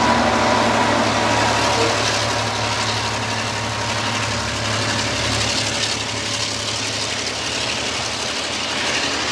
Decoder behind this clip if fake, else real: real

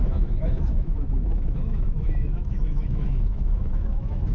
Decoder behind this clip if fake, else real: fake, autoencoder, DAC-VAE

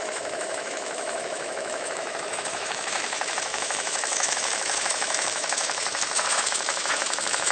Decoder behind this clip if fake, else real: fake, autoencoder, DAC-VAE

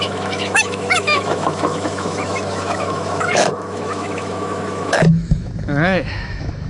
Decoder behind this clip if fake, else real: fake, autoencoder, DAC-VAE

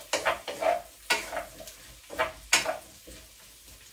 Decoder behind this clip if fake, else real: real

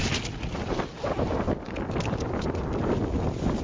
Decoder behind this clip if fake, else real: real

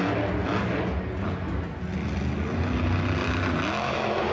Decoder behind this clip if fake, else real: real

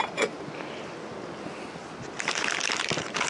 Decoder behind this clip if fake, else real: real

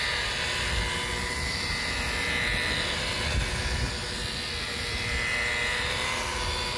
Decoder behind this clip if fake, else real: real